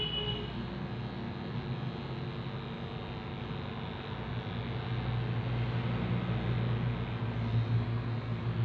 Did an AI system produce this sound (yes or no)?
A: no